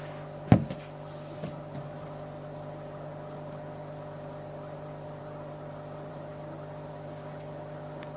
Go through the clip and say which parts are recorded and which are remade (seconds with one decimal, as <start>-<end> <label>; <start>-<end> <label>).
0.0-8.2 recorded